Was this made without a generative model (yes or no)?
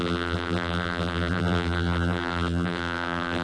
no